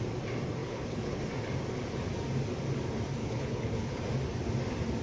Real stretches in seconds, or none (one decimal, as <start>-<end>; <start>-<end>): 0.0-0.6; 1.2-3.2; 4.0-5.0